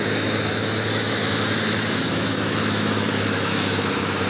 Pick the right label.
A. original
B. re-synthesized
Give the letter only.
B